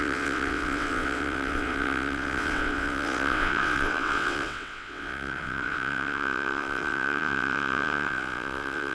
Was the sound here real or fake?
fake